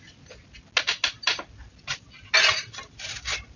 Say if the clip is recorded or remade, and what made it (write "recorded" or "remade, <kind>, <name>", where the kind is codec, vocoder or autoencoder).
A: recorded